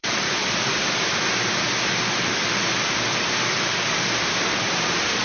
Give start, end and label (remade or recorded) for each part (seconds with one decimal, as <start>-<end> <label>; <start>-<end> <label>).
0.0-2.3 remade; 2.3-3.2 recorded; 3.2-5.2 remade

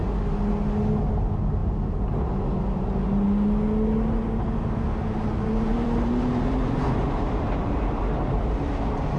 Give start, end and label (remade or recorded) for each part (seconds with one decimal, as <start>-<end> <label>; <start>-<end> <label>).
0.0-5.2 recorded; 5.2-8.6 remade; 8.6-9.2 recorded

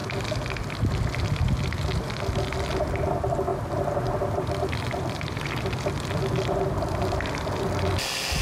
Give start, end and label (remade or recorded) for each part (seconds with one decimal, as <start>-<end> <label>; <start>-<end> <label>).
0.0-8.4 recorded

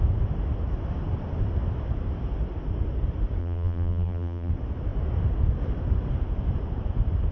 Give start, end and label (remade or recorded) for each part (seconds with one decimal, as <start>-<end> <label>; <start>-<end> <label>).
0.0-3.4 recorded; 3.4-4.5 remade; 4.5-7.3 recorded

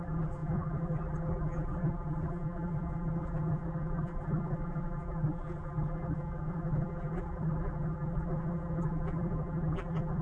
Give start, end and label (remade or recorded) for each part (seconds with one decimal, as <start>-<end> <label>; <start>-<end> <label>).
0.0-10.2 remade

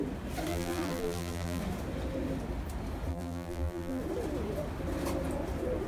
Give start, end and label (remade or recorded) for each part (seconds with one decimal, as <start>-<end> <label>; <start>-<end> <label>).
0.0-0.5 recorded; 0.5-1.6 remade; 1.6-3.1 recorded; 3.1-4.0 remade; 4.0-5.9 recorded

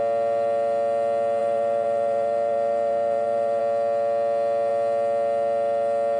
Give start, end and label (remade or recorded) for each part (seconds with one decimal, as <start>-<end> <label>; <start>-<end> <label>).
0.0-1.4 recorded; 1.4-3.6 remade; 3.6-6.2 recorded